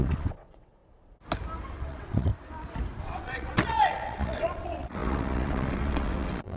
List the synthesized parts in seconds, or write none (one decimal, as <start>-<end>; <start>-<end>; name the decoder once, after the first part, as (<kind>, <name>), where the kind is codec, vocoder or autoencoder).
0.0-0.8 (vocoder, WaveNeXt); 1.7-2.3; 3.0-6.6